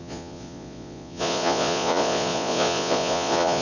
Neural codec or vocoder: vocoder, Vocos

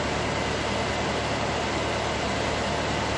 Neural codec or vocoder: none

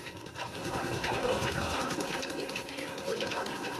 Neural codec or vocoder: codec, SNAC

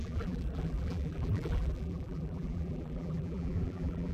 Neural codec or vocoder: vocoder, BigVGAN v2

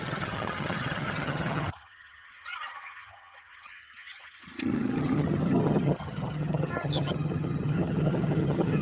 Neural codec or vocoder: vocoder, HiFi-GAN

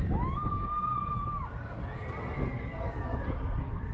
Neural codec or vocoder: none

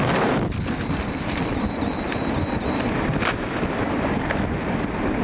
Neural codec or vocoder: vocoder, BigVGAN v2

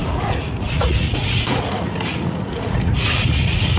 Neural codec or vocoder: vocoder, Vocos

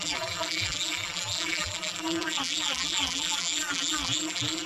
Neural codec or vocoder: vocoder, BigVGAN v2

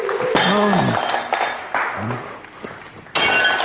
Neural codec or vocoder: none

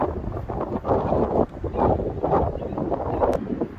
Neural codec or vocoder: none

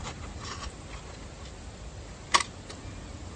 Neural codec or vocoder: none